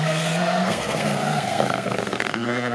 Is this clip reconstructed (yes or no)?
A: yes